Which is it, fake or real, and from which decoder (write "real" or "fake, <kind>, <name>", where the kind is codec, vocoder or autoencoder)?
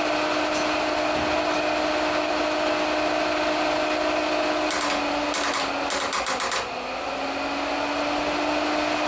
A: real